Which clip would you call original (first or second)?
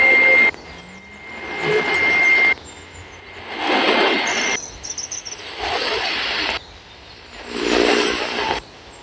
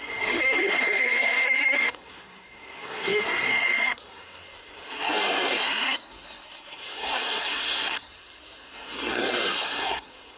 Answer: first